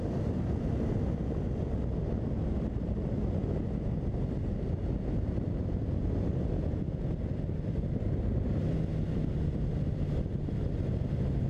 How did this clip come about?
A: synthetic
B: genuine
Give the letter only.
B